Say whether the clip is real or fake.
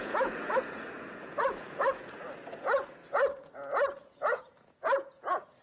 fake